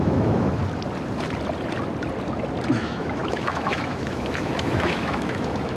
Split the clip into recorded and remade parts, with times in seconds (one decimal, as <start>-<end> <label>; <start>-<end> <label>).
0.0-0.6 remade; 0.6-2.7 recorded; 2.7-5.8 remade